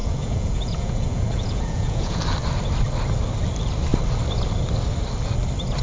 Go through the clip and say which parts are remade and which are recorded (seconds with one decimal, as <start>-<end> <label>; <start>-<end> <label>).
0.0-2.2 remade; 2.2-5.8 recorded